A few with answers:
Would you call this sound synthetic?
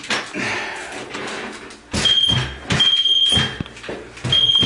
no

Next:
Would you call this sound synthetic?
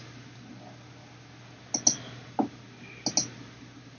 no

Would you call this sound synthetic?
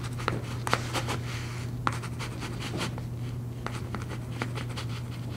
no